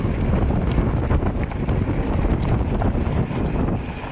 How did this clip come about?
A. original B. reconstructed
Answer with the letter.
A